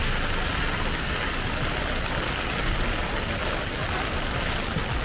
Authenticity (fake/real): real